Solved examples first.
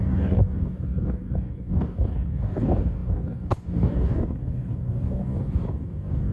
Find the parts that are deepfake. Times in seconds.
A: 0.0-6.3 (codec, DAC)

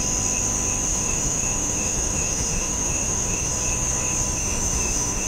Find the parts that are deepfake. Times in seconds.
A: 0.9-3.5 (autoencoder, DAC-VAE); 4.4-5.3

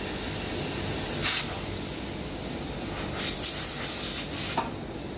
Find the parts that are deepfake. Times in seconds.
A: none

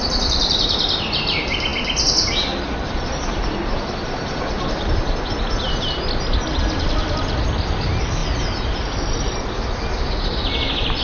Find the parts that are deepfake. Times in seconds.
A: none

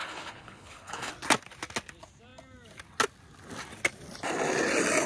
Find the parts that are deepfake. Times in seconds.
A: 0.0-1.1 (codec, HILCodec)

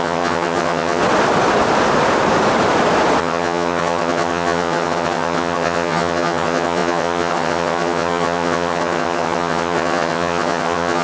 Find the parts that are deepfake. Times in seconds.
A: 0.0-1.0 (vocoder, HiFi-GAN); 3.2-11.0

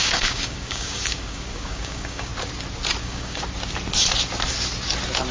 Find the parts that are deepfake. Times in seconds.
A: 0.0-2.3 (codec, DAC); 3.0-3.4

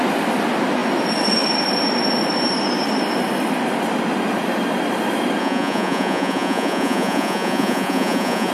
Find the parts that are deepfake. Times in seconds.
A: 5.4-8.5 (vocoder, Vocos)